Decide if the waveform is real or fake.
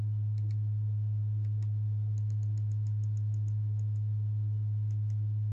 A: real